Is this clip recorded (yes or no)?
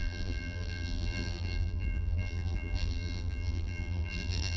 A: no